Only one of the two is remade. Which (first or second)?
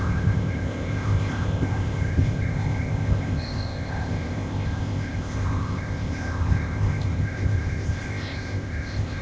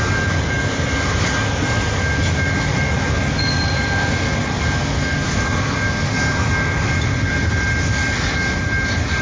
first